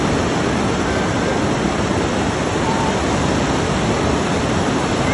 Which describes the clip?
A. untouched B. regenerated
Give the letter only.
A